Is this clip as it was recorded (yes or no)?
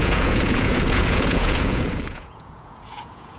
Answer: no